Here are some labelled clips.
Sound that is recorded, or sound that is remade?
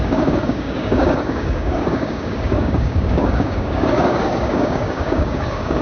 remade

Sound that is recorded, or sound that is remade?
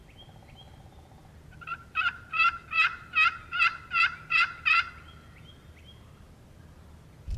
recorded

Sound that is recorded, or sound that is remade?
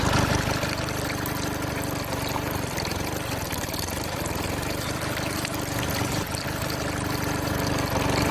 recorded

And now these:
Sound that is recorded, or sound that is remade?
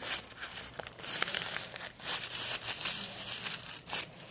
remade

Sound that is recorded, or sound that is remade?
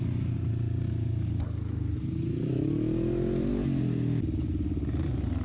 recorded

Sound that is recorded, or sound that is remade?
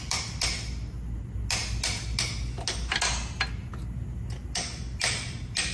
recorded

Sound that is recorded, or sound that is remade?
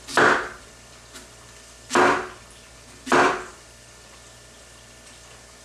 recorded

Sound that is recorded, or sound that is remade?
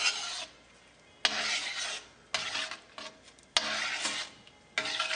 recorded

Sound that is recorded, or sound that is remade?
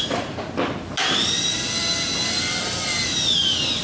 recorded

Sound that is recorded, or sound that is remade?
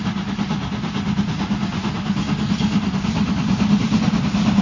recorded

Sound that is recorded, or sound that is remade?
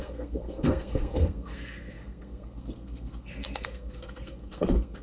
remade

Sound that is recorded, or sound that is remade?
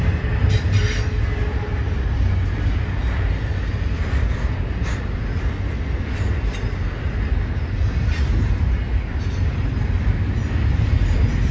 recorded